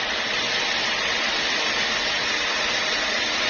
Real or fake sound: real